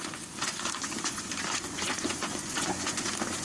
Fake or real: fake